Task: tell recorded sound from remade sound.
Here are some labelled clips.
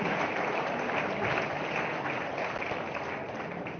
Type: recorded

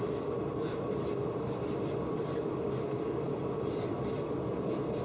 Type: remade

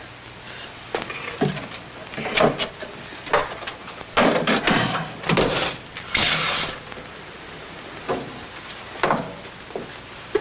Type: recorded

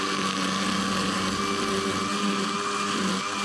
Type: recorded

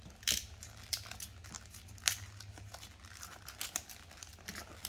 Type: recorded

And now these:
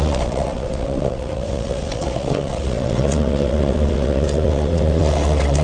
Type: remade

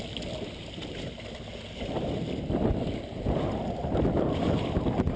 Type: recorded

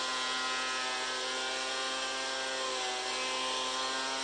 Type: recorded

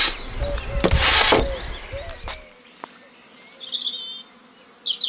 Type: recorded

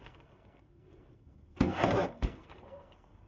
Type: remade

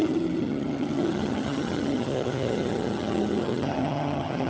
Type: remade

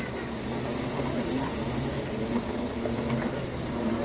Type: recorded